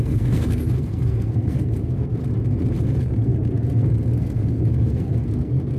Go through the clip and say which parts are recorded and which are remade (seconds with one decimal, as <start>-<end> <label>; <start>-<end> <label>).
0.0-2.2 remade; 2.2-2.8 recorded; 2.8-5.8 remade